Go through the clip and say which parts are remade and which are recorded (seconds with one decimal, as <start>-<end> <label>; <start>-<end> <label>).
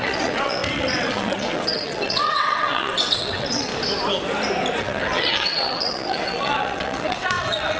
0.0-3.7 remade; 3.7-4.8 recorded; 4.8-7.8 remade